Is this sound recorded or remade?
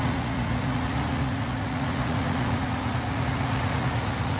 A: remade